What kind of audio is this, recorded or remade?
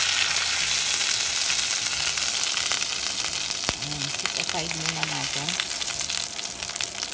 recorded